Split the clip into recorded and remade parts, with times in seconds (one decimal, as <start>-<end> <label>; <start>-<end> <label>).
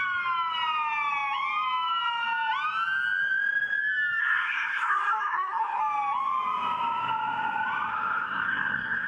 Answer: 0.0-4.2 recorded; 4.2-5.8 remade; 5.8-7.9 recorded; 7.9-9.1 remade